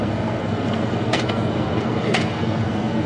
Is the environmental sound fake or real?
fake